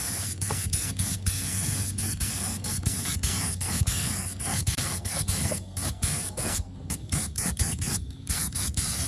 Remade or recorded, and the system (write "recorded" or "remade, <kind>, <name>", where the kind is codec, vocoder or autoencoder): remade, codec, SNAC